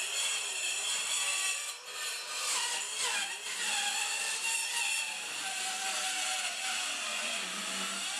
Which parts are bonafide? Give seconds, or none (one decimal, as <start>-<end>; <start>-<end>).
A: 0.0-7.1; 7.7-8.2